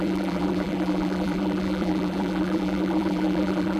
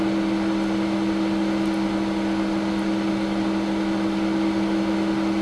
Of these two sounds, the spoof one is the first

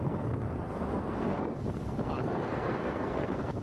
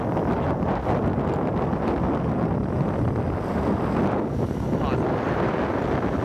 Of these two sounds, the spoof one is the first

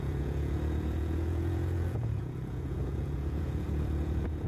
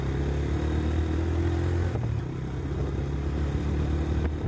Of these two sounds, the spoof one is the first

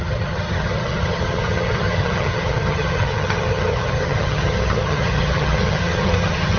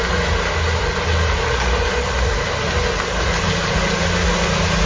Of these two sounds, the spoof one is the first